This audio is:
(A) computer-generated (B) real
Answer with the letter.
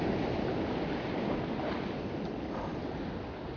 B